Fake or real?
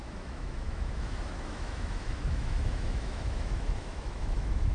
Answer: fake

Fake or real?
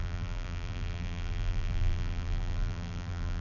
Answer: fake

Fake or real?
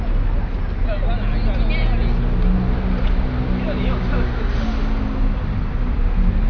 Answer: real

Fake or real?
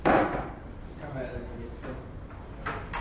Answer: fake